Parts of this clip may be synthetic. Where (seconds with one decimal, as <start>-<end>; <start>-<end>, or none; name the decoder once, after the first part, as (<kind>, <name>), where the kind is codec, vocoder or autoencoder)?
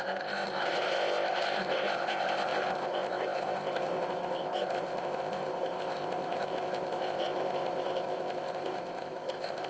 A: 0.0-9.7 (codec, ZipCodec)